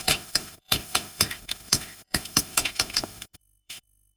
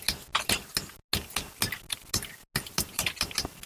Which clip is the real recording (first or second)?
second